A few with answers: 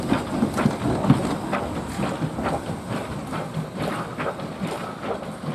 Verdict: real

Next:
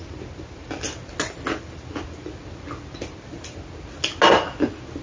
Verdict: real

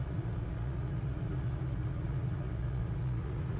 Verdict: fake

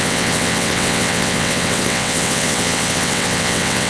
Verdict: fake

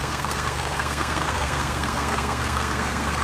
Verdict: fake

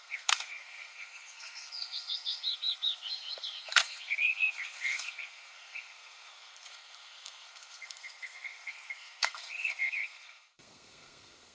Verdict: fake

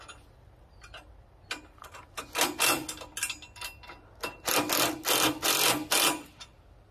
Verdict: real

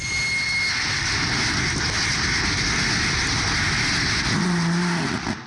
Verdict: real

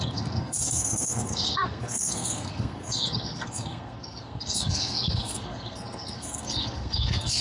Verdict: fake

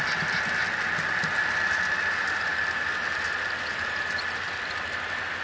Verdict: real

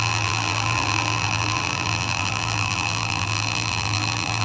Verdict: fake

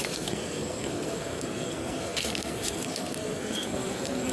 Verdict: fake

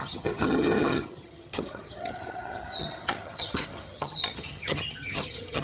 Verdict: fake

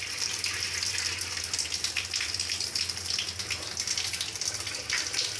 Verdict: real